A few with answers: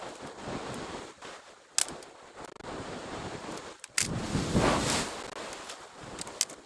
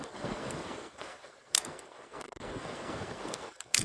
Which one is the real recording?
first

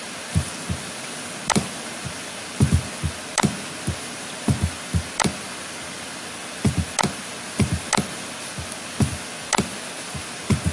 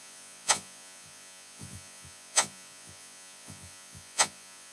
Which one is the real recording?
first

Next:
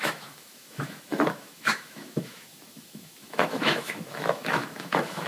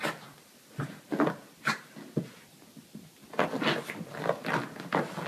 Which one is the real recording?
second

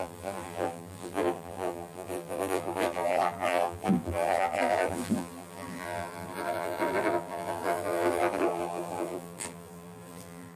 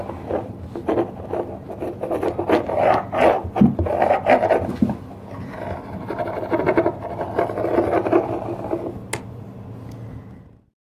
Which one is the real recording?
second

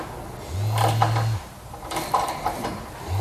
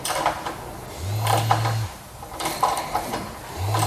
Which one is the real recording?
first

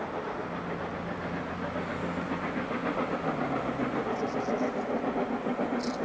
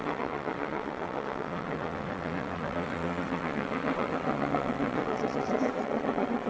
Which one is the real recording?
first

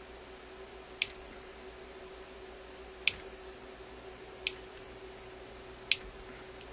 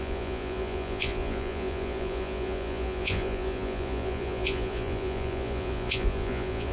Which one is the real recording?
first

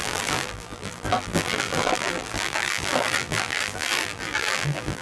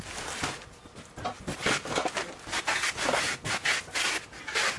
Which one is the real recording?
second